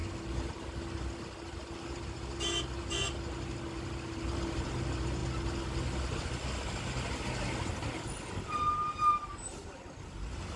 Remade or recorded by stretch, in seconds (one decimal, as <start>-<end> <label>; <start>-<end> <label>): 0.0-10.6 recorded